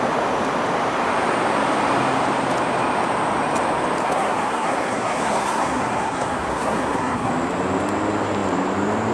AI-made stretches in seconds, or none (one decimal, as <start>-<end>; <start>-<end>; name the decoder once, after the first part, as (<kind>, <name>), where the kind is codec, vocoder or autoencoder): 4.0-7.3 (codec, SNAC)